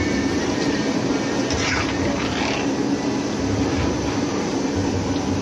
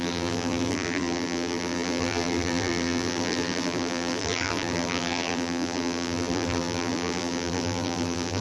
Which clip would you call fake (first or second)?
second